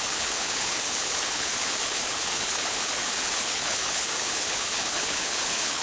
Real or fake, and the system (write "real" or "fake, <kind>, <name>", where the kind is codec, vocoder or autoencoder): fake, codec, HILCodec